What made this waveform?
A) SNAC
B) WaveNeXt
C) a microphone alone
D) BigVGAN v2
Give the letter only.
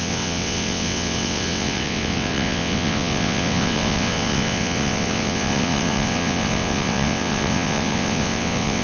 B